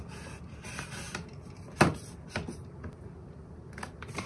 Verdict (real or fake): real